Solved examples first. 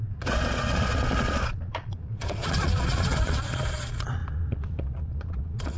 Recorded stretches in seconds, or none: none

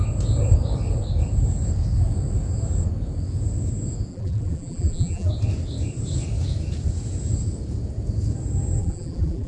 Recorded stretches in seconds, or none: 0.0-4.1; 5.3-8.8

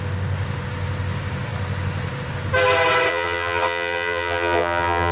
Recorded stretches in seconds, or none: 0.0-3.1

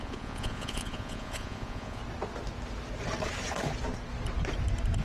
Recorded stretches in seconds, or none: 2.0-5.0